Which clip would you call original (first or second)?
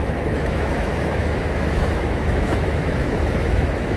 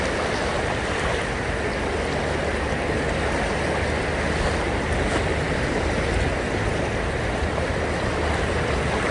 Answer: second